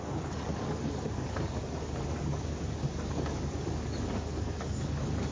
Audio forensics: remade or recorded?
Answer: remade